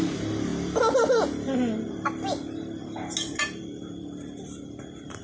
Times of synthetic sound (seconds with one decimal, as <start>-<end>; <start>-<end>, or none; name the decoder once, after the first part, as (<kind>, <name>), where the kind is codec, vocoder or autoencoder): none